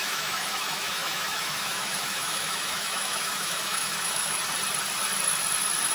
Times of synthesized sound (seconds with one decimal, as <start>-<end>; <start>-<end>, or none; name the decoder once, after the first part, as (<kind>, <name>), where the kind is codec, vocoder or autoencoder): 0.0-4.4 (autoencoder, DAC-VAE)